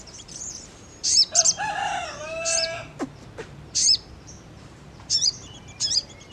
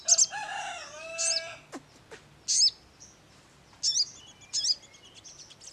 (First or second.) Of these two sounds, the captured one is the second